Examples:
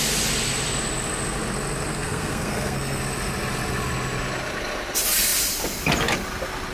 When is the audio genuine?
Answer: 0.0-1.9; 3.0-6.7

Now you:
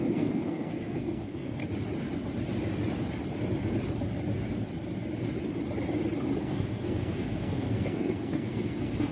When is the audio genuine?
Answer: 1.6-6.4

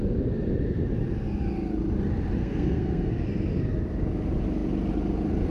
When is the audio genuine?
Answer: 0.0-2.4; 3.1-5.5

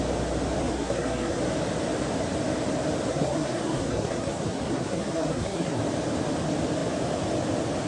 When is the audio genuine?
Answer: 0.0-0.6; 1.4-3.1; 5.8-7.9

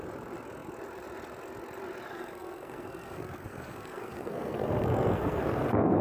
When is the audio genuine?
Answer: 0.0-2.1

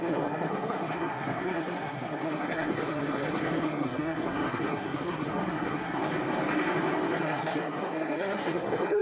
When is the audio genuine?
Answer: 6.0-7.2

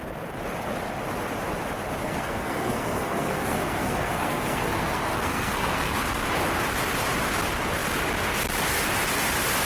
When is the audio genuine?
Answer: 0.0-2.0; 6.0-9.6

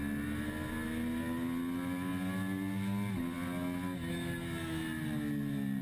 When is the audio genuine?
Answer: 0.0-5.8